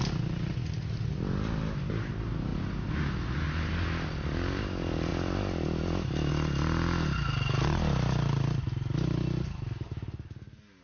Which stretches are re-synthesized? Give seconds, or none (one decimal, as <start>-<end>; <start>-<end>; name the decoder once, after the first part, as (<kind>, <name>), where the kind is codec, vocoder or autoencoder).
none